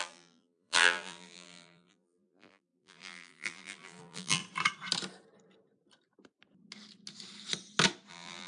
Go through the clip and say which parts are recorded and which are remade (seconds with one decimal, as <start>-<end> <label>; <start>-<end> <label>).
0.0-4.4 remade; 4.4-8.1 recorded; 8.1-8.5 remade